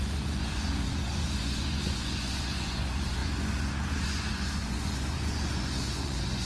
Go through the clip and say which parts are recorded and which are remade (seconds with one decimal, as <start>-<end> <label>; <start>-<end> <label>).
0.0-6.5 remade